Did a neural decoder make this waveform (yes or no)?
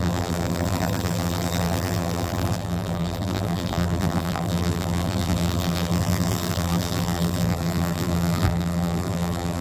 yes